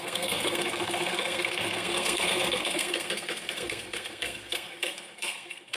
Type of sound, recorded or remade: remade